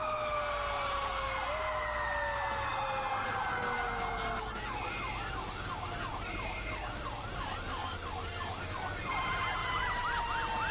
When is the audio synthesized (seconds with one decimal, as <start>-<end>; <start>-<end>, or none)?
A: 6.1-7.5; 9.6-10.2